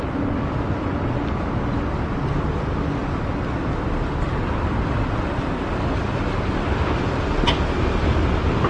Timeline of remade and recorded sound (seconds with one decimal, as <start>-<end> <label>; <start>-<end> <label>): 0.0-8.7 recorded